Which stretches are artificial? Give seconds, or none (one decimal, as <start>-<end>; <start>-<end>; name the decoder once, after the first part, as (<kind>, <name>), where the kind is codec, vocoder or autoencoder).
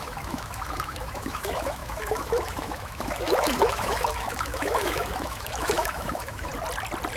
0.0-6.5 (autoencoder, DAC-VAE)